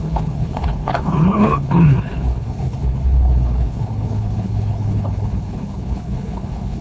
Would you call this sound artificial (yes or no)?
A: yes